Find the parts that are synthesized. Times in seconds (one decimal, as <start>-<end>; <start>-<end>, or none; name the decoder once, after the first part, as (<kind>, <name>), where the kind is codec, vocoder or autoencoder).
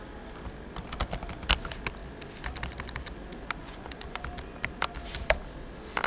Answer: 3.6-4.2 (vocoder, Vocos)